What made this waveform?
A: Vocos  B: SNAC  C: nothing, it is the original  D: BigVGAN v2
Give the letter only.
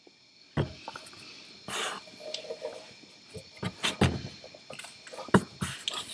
C